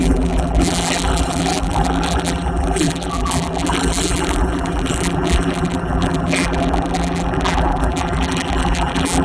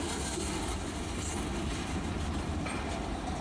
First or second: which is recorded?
second